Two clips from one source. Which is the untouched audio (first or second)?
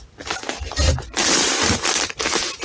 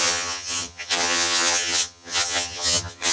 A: first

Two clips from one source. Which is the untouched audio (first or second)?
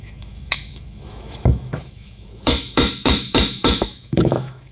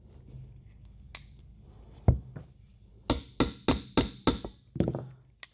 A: second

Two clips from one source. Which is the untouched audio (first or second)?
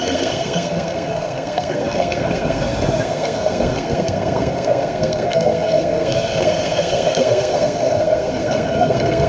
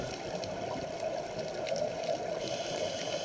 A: second